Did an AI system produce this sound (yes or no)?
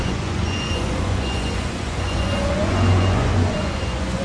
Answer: yes